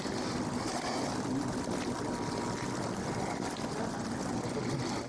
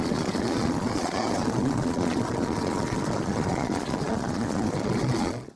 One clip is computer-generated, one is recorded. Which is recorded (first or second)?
first